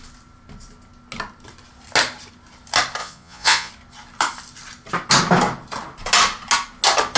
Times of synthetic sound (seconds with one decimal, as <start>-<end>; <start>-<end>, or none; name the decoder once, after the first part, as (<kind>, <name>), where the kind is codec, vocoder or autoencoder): 3.0-3.7 (vocoder, Vocos)